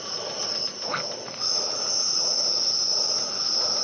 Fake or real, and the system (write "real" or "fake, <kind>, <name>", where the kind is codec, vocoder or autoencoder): real